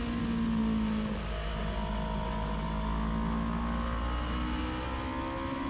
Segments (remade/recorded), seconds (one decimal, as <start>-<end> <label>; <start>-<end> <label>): 0.0-5.7 recorded